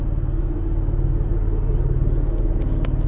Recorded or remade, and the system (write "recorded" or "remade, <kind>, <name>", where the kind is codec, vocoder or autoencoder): recorded